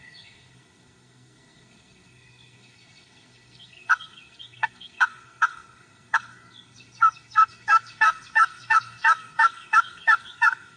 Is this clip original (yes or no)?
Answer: no